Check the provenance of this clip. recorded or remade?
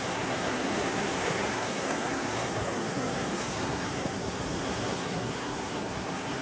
remade